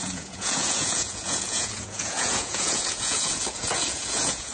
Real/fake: fake